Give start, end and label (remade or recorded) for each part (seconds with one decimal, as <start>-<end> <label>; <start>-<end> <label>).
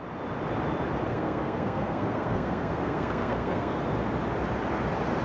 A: 0.0-1.1 recorded; 1.1-3.8 remade; 3.8-5.2 recorded